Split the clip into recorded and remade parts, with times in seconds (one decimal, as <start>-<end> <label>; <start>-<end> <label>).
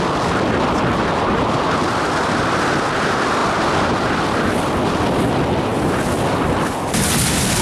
0.0-7.6 recorded